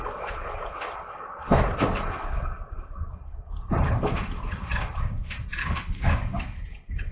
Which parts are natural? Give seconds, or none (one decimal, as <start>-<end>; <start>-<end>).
0.0-5.6; 6.1-7.1